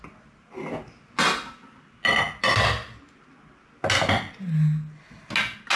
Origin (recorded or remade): recorded